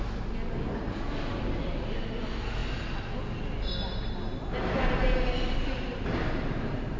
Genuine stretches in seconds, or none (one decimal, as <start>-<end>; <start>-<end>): 0.0-7.0